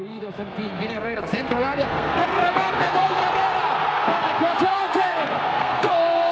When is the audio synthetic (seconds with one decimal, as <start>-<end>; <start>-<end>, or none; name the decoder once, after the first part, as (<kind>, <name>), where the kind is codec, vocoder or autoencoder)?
0.0-3.2 (codec, SNAC); 3.9-6.3